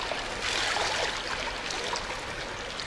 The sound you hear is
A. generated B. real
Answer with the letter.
B